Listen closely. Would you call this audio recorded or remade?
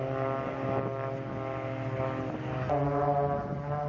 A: recorded